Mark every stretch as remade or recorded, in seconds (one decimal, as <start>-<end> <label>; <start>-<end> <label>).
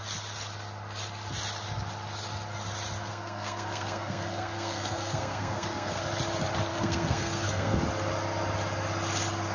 0.0-3.1 recorded; 3.1-6.0 remade; 6.0-6.7 recorded; 6.7-7.8 remade; 7.8-9.5 recorded